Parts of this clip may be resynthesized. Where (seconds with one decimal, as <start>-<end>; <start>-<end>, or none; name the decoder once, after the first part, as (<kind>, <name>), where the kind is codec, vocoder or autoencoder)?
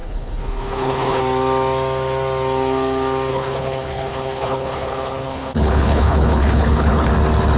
0.0-1.2 (codec, HILCodec); 3.3-7.1